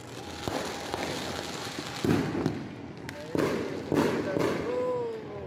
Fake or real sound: real